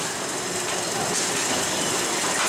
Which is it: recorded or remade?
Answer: recorded